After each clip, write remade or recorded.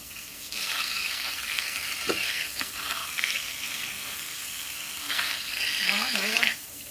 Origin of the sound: remade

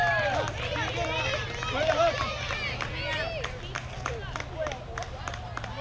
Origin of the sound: recorded